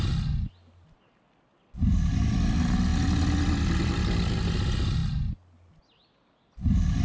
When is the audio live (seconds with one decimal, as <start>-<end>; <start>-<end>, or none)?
0.0-7.0